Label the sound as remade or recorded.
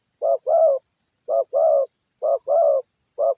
recorded